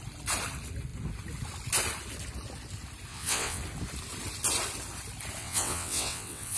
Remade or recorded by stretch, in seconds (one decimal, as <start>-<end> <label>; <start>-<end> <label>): 0.0-3.1 recorded; 3.1-3.6 remade; 3.6-5.4 recorded; 5.4-6.6 remade